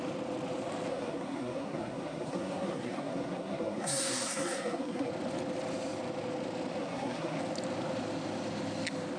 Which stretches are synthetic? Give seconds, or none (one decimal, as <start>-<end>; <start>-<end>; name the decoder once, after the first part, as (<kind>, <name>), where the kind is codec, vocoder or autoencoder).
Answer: 0.9-5.1 (codec, SNAC); 6.8-7.4